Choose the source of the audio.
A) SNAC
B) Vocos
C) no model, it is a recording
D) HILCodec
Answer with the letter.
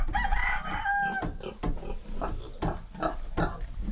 C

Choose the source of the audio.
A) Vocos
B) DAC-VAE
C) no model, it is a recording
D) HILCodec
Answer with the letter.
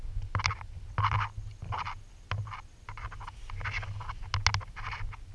C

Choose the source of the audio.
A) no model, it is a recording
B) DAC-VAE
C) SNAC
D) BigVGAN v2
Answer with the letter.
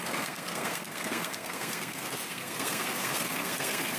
C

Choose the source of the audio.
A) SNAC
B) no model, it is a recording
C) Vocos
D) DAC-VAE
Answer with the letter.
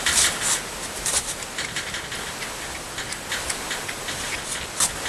B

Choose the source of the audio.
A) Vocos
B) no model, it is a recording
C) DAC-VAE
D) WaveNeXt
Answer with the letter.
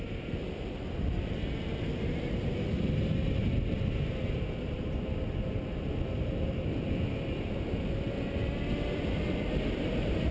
B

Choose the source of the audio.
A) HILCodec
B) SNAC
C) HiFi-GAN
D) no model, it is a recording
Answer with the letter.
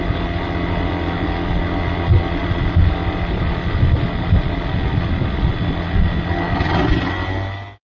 D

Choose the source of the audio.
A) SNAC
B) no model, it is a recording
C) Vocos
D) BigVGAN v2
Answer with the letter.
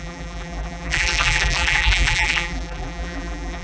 D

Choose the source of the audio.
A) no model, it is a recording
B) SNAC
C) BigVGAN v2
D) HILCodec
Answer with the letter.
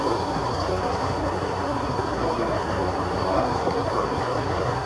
B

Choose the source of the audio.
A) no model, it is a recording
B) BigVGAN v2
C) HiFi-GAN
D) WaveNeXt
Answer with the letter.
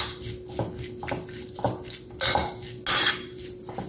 A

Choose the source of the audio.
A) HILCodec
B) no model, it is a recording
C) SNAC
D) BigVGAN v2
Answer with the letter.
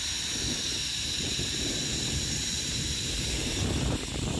D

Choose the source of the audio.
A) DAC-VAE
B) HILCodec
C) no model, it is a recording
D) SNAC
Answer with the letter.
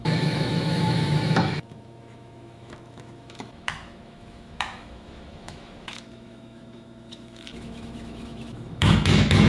A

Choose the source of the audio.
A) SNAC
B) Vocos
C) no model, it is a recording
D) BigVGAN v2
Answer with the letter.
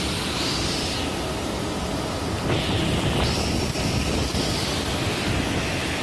C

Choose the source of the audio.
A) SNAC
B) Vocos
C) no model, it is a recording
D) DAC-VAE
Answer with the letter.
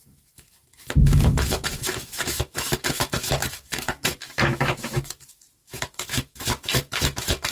D